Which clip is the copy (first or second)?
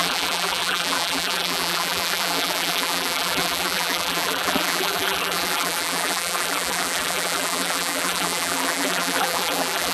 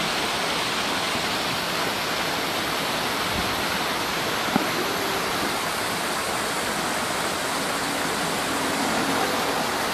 first